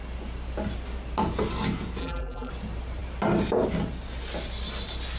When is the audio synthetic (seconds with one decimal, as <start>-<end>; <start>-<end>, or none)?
2.0-2.5